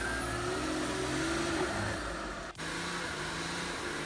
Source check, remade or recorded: recorded